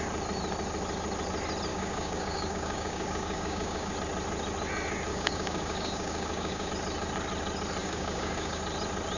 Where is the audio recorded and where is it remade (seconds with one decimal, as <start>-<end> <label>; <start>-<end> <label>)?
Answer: 0.0-1.7 recorded; 1.7-3.9 remade; 3.9-5.1 recorded; 5.1-6.7 remade; 6.7-7.8 recorded; 7.8-8.6 remade; 8.6-9.2 recorded